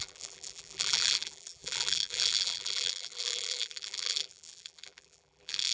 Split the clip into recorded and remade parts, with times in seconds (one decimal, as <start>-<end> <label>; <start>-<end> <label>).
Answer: 0.0-5.7 remade